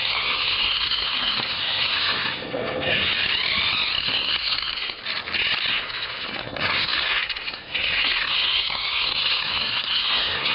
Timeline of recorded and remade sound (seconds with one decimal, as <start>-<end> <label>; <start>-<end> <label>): 0.0-3.1 remade; 3.1-4.0 recorded; 4.0-5.0 remade; 5.0-5.7 recorded; 5.7-10.5 remade